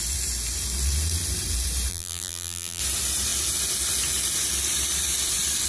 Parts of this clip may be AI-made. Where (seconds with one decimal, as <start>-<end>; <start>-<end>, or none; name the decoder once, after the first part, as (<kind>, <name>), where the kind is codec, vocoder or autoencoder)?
1.9-2.8 (vocoder, BigVGAN v2)